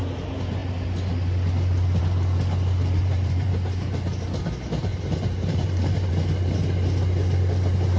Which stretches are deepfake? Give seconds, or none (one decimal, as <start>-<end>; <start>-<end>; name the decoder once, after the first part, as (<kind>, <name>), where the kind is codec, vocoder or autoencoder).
3.0-3.5 (vocoder, BigVGAN v2); 4.9-6.1